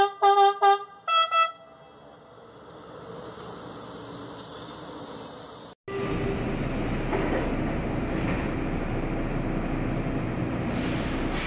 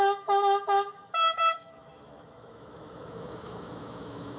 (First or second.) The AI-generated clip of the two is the second